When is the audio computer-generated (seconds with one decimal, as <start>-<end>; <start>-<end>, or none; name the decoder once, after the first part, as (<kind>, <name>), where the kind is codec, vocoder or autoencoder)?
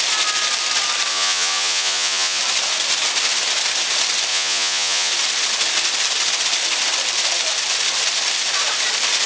1.1-2.4 (vocoder, Vocos); 4.3-5.1